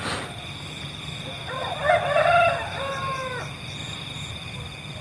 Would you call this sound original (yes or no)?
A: yes